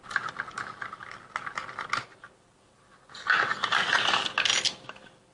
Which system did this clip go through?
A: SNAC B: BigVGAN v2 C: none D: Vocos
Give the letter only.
C